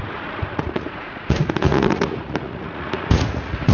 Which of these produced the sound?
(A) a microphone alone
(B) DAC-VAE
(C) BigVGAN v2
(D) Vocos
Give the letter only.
D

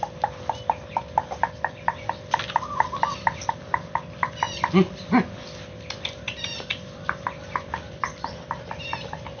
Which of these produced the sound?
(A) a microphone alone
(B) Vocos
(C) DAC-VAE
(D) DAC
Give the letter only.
A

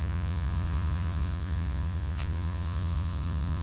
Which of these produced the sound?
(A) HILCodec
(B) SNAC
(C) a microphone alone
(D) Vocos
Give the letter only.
D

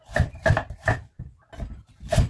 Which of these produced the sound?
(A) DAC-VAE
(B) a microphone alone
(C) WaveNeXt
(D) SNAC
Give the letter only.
B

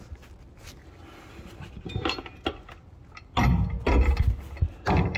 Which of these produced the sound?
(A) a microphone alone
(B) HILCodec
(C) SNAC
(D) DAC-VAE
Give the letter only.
A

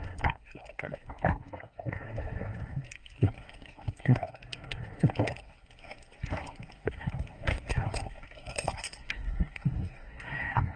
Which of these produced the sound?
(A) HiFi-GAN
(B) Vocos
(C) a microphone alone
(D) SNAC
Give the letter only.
D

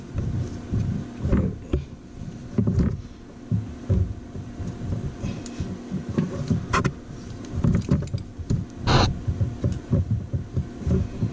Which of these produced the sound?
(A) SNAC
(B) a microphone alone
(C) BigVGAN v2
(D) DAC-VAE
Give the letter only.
B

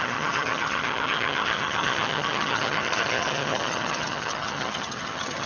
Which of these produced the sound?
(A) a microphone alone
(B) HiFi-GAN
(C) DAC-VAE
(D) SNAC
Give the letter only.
B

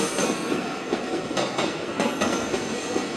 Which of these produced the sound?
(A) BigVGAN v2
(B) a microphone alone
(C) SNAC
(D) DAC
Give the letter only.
C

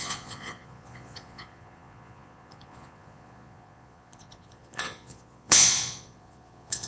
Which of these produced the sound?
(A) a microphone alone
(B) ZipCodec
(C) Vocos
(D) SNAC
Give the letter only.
C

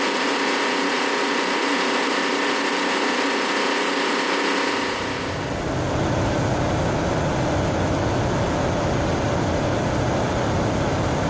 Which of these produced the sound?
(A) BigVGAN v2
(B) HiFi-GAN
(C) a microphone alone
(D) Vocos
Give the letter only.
C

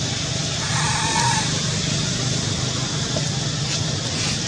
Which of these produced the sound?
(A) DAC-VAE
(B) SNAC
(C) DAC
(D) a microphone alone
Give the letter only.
D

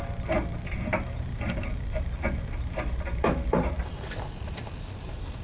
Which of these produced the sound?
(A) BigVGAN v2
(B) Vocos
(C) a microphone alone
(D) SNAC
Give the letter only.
A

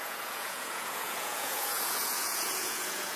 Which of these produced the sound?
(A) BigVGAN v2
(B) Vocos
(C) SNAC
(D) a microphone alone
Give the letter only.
B